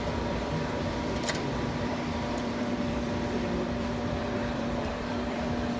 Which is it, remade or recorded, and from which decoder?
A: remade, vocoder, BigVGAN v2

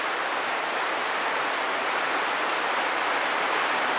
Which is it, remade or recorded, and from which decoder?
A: recorded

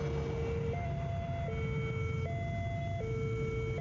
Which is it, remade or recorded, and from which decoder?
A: recorded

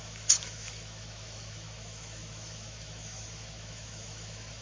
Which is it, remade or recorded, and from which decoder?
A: remade, autoencoder, DAC-VAE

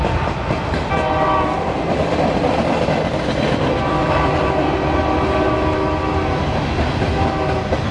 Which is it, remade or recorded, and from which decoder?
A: recorded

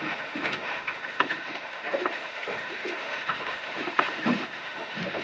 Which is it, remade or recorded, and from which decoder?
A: remade, autoencoder, DAC-VAE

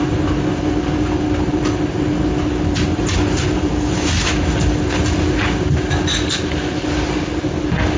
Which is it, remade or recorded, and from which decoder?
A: recorded